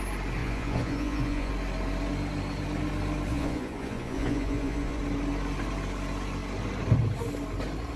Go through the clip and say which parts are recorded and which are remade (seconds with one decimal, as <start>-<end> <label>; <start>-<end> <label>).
0.0-0.4 recorded; 0.4-1.5 remade; 1.5-3.3 recorded; 3.3-5.0 remade; 5.0-8.0 recorded